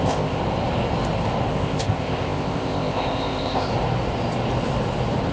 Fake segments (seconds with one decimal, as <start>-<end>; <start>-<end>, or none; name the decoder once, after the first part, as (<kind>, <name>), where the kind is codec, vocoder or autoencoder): 0.0-0.4 (codec, ZipCodec); 1.5-3.7